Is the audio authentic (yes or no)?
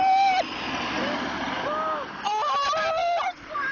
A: yes